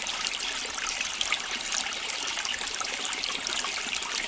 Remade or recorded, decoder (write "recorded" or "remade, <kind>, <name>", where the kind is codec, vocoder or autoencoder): recorded